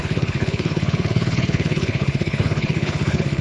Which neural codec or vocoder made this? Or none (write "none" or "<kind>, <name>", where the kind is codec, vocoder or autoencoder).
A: codec, HILCodec